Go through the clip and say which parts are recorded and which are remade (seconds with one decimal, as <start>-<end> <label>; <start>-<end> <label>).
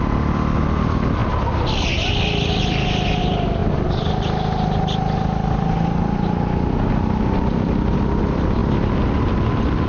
0.0-9.9 recorded